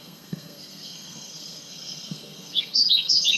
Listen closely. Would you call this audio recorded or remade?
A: remade